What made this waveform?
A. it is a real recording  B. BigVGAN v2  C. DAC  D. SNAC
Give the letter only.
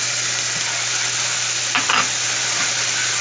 A